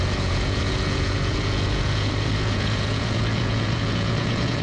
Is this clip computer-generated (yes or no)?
yes